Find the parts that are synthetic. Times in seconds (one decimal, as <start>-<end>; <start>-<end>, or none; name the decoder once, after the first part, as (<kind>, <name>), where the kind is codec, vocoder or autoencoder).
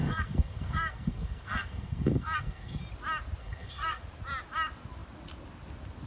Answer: 0.0-2.8 (codec, SNAC); 3.4-4.0